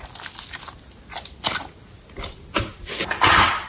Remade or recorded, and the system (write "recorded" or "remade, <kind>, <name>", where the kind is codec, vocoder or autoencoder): recorded